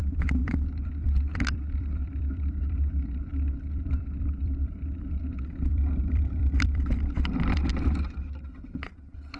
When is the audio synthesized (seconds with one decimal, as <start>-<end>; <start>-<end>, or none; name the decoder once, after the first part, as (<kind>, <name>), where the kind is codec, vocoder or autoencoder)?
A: 0.0-7.7 (vocoder, BigVGAN v2); 8.7-9.4